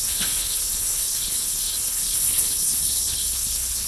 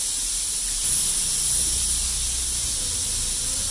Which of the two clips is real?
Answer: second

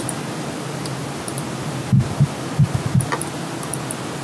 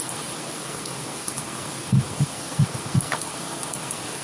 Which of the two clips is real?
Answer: first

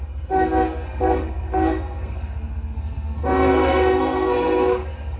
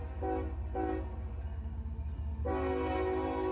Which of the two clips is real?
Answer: second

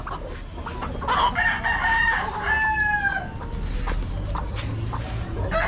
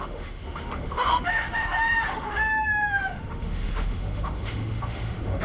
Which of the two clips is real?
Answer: first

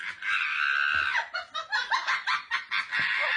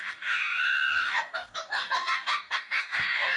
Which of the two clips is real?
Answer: first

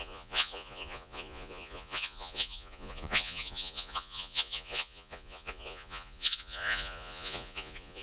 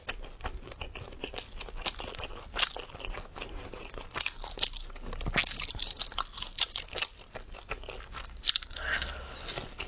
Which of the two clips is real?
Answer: second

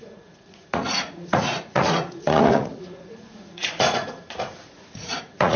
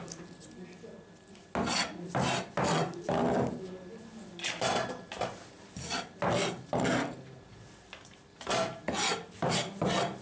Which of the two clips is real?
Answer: second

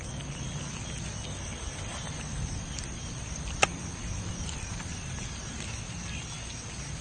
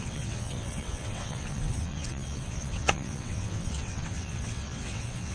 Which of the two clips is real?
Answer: first